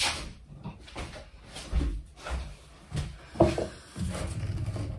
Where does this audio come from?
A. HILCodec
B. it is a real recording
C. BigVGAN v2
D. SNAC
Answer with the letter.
B